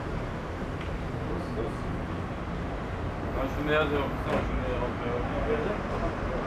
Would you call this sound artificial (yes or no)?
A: no